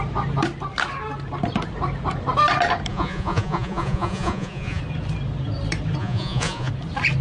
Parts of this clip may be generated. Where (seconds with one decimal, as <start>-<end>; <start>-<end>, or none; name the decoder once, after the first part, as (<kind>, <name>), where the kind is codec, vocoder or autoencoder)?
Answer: 2.9-4.8 (vocoder, Vocos); 6.0-6.7